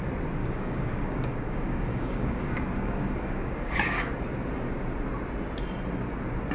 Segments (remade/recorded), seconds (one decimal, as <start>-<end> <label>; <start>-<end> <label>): 0.0-0.4 recorded; 0.4-4.1 remade; 4.1-6.5 recorded